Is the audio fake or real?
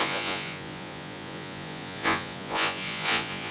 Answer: fake